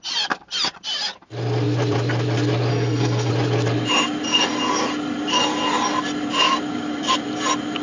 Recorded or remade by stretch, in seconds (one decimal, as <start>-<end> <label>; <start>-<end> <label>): 0.0-2.7 recorded; 2.7-3.3 remade; 3.3-7.8 recorded